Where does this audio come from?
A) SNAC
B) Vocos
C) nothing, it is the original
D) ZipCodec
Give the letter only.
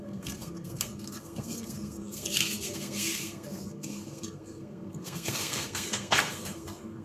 A